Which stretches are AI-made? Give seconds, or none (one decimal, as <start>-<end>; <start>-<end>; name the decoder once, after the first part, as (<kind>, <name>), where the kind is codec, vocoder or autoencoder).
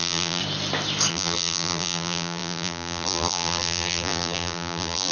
0.0-0.4 (vocoder, BigVGAN v2); 1.1-5.1